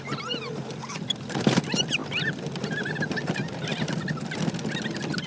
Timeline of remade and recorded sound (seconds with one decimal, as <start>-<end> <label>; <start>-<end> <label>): 0.0-5.3 recorded